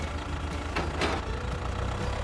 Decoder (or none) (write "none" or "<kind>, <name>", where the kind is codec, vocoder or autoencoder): none